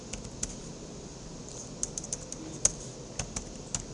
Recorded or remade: recorded